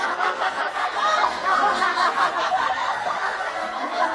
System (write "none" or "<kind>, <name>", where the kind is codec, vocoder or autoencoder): codec, SNAC